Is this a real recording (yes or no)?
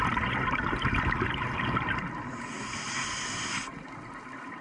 yes